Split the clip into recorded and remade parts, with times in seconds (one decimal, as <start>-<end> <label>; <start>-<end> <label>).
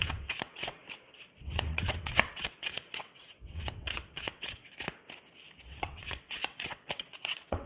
0.0-0.8 remade; 0.8-1.4 recorded; 1.4-4.6 remade; 4.6-5.6 recorded; 5.6-7.7 remade